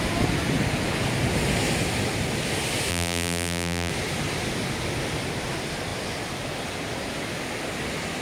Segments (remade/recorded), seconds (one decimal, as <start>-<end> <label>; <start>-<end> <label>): 0.0-2.9 recorded; 2.9-3.9 remade; 3.9-8.2 recorded